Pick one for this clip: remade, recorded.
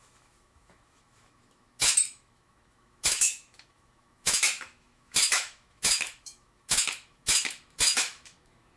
remade